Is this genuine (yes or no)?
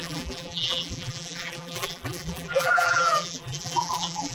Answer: no